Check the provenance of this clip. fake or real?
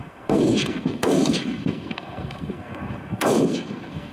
fake